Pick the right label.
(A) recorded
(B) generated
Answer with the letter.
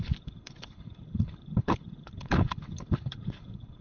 B